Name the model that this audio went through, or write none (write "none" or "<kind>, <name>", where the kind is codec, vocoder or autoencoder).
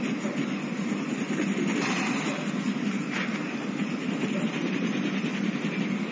none